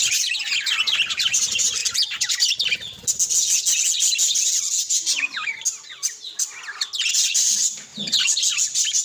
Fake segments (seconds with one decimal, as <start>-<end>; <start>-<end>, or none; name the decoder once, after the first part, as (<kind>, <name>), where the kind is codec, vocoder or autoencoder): none